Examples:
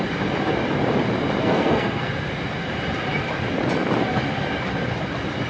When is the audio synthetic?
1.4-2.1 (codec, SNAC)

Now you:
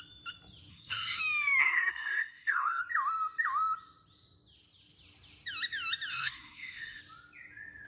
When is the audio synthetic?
0.7-1.2 (codec, SNAC); 1.6-2.8; 6.1-7.0

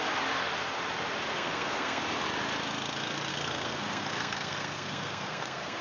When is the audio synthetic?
1.3-2.0 (codec, SNAC); 3.3-5.8

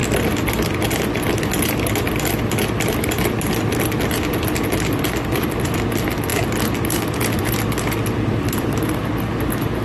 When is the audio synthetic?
none